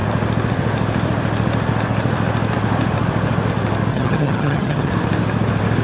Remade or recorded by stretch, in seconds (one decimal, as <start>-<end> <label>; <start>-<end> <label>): 0.0-3.9 recorded; 3.9-4.9 remade; 4.9-5.8 recorded